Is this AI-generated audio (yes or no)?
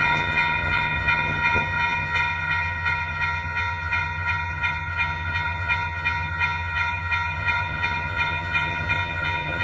yes